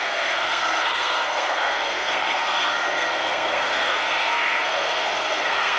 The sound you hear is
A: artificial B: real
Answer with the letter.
A